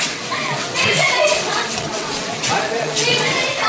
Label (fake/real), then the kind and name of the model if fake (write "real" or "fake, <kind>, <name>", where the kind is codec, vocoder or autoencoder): fake, vocoder, WaveNeXt